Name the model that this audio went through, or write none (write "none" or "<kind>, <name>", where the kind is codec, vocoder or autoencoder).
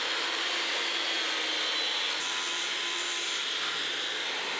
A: none